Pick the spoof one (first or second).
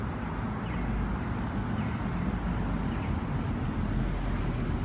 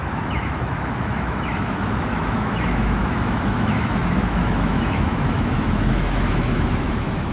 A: second